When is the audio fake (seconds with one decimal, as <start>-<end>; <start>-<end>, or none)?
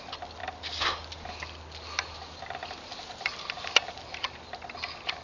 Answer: none